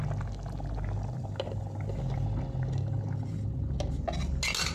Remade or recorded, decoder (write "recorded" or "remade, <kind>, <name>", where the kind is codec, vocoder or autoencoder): recorded